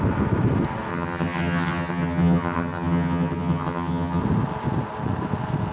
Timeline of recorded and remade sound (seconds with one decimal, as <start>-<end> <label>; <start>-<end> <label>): 0.0-0.9 recorded; 0.9-4.2 remade; 4.2-5.7 recorded